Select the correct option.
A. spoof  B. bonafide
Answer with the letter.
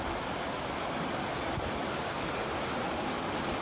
B